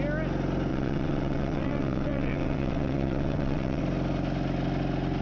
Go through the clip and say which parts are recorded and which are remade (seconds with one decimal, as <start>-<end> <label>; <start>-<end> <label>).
0.0-0.7 recorded; 0.7-3.8 remade; 3.8-5.2 recorded

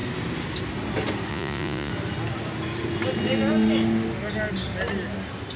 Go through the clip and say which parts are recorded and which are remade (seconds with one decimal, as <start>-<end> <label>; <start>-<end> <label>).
0.0-1.3 recorded; 1.3-1.9 remade; 1.9-5.6 recorded

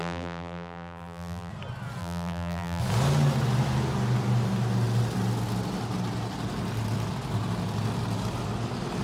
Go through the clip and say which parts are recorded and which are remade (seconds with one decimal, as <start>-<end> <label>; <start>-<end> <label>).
0.0-1.5 remade; 1.5-2.0 recorded; 2.0-2.8 remade; 2.8-9.0 recorded

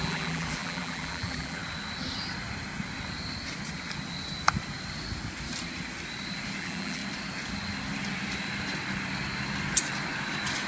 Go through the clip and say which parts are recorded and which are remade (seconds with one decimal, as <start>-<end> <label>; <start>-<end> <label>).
0.0-1.6 remade; 1.6-6.6 recorded; 6.6-7.0 remade; 7.0-10.7 recorded

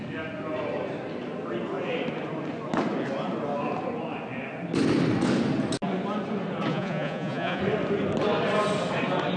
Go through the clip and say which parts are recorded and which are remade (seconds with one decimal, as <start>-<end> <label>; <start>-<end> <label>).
0.0-6.7 recorded; 6.7-7.6 remade; 7.6-9.4 recorded